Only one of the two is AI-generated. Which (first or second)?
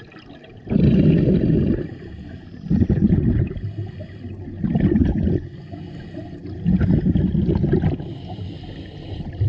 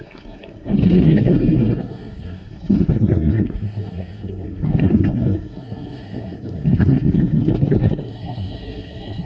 second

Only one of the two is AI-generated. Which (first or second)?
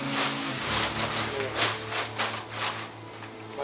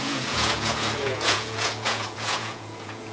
second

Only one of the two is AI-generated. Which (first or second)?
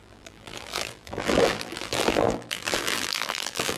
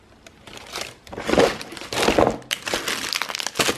first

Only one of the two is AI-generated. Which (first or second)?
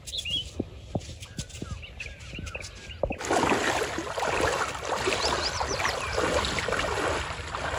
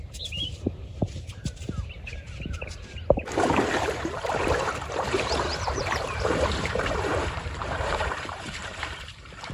second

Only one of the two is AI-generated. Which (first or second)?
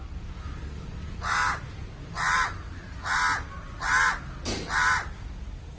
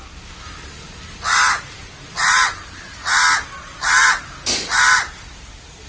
second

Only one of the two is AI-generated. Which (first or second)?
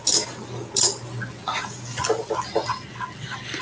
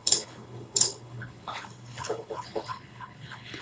second